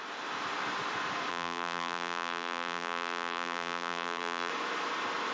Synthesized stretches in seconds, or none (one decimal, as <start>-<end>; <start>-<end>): 1.3-4.5